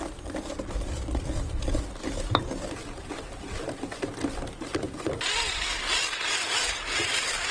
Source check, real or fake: real